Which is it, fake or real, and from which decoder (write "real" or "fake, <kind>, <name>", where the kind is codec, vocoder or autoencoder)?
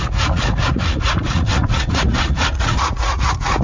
fake, vocoder, Vocos